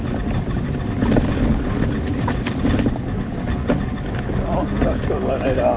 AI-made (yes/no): no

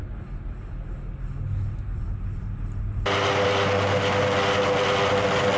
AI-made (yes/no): no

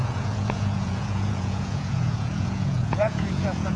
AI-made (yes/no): yes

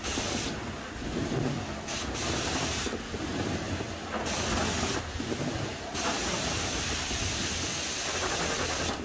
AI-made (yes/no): no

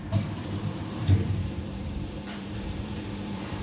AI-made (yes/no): yes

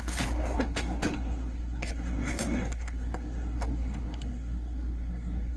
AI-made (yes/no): yes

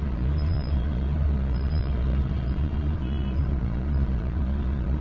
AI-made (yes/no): yes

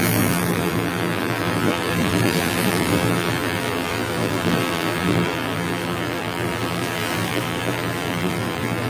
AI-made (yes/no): yes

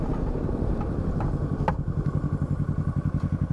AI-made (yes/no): no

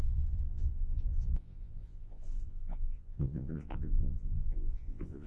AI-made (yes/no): yes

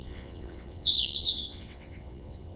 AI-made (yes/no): yes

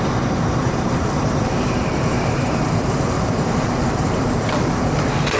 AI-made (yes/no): yes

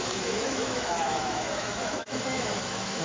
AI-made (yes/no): yes